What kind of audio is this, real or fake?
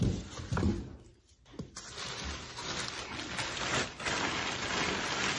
real